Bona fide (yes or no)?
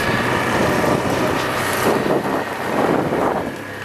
yes